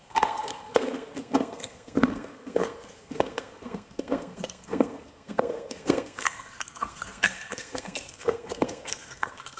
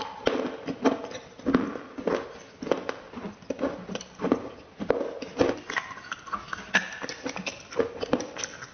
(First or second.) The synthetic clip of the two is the first